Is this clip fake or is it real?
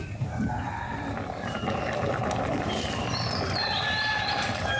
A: real